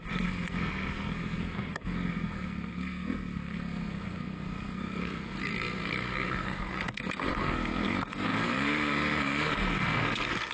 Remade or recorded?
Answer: remade